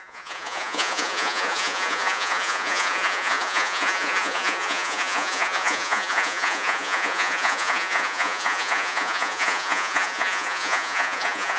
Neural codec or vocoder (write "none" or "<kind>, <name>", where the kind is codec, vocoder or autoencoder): vocoder, Vocos